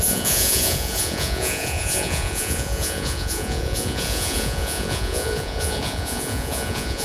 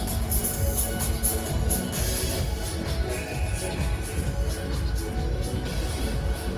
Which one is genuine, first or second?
second